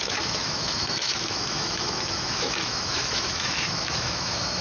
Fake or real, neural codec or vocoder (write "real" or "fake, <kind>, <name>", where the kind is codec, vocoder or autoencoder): fake, autoencoder, DAC-VAE